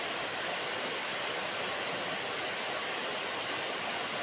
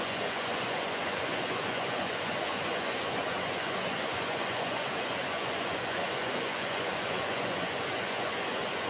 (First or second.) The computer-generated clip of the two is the second